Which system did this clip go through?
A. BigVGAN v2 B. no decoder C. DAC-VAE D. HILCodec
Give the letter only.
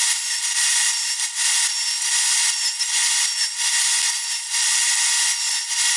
B